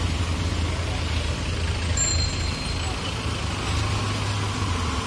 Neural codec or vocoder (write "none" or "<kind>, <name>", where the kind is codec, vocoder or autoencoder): none